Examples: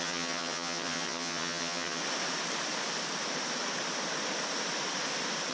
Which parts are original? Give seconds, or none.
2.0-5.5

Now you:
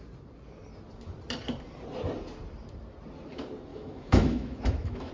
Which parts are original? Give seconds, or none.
0.0-3.7